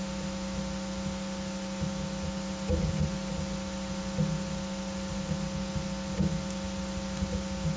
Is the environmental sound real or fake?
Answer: real